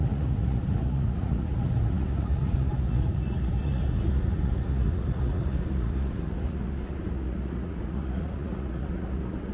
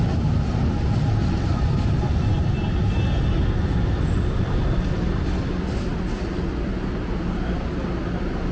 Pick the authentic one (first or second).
second